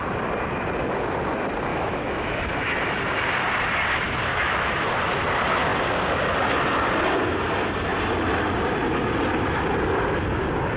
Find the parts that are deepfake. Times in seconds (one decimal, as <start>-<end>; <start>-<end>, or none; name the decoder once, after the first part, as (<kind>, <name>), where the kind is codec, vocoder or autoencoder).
1.7-2.4 (autoencoder, DAC-VAE); 4.3-4.9